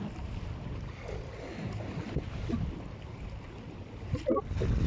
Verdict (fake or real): real